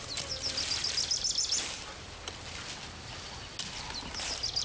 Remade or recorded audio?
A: recorded